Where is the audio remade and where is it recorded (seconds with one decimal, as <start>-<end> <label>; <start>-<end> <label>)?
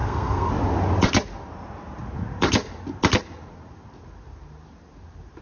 0.0-0.5 remade; 0.5-5.4 recorded